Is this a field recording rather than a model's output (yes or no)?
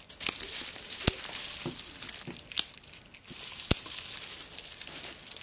yes